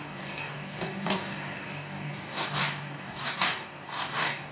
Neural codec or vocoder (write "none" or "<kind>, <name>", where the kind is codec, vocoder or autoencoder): codec, DAC